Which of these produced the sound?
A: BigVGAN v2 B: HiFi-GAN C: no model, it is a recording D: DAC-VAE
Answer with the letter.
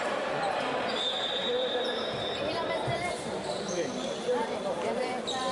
A